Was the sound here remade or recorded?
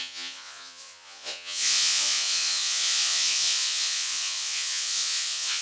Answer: remade